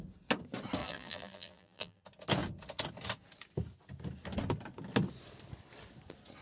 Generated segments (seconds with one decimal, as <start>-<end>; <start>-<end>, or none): 0.8-2.0